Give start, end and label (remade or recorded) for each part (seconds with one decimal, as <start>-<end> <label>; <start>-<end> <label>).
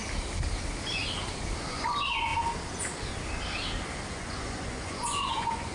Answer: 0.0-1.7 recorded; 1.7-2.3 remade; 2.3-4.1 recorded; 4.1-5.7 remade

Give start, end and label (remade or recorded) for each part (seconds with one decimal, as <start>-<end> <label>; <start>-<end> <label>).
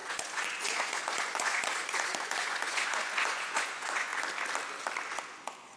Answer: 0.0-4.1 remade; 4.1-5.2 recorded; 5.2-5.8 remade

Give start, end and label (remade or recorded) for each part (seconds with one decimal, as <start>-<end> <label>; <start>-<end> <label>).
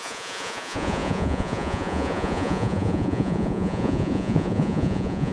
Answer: 0.0-5.3 remade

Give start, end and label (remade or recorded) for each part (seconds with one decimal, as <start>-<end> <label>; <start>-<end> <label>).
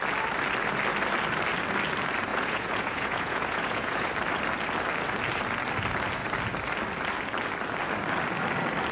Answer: 0.0-2.3 recorded; 2.3-4.1 remade; 4.1-8.9 recorded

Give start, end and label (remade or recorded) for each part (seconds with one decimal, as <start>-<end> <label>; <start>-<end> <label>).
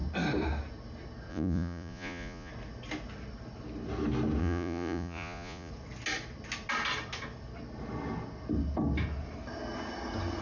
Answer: 0.0-1.3 recorded; 1.3-2.5 remade; 2.5-4.4 recorded; 4.4-5.7 remade; 5.7-10.4 recorded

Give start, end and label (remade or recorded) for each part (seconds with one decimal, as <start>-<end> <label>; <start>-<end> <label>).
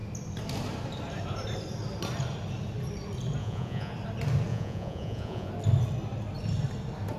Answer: 0.0-3.4 recorded; 3.4-3.9 remade; 3.9-4.5 recorded; 4.5-5.5 remade; 5.5-7.2 recorded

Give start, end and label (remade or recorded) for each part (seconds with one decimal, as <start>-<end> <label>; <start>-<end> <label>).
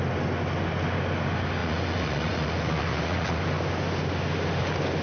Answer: 0.0-1.6 recorded; 1.6-3.4 remade; 3.4-5.0 recorded